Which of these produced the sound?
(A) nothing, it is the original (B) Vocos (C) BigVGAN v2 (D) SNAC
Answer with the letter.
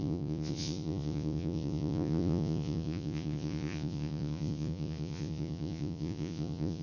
B